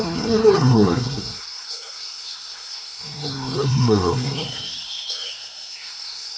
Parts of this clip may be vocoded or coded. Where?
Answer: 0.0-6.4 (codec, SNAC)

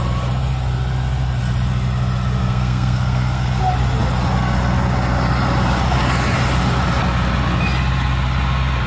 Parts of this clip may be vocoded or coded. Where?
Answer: 2.4-3.6 (codec, SNAC)

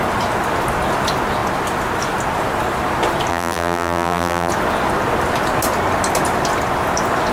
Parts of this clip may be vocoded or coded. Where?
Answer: 3.3-4.5 (vocoder, BigVGAN v2)

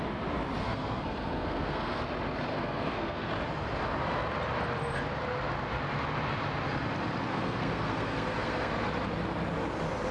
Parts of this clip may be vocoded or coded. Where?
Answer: 0.6-2.0 (codec, SNAC); 2.5-3.3; 7.3-8.7

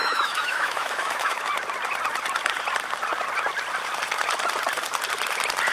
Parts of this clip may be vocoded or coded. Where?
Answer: 0.0-1.4 (autoencoder, DAC-VAE)

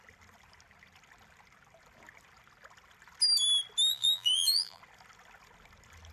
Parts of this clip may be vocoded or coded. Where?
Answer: 3.9-4.8 (vocoder, BigVGAN v2)